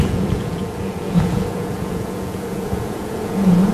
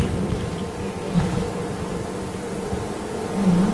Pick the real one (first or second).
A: second